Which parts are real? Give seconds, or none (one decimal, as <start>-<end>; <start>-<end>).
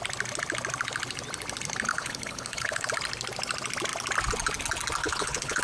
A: 0.0-1.9; 2.9-5.0